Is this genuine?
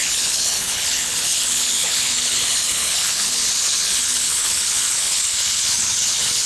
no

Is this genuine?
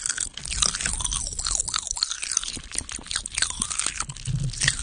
yes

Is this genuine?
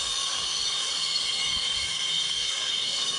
no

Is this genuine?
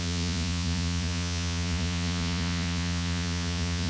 no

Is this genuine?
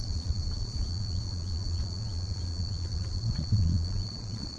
no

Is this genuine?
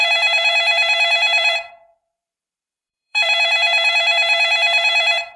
no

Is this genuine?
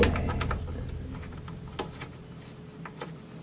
yes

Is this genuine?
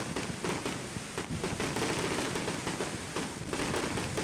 yes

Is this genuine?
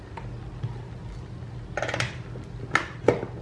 yes